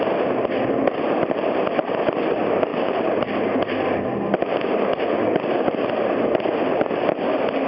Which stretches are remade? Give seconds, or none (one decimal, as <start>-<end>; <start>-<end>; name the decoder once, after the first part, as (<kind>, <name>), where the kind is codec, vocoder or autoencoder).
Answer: 2.7-3.3 (vocoder, BigVGAN v2)